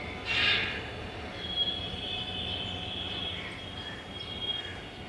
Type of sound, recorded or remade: recorded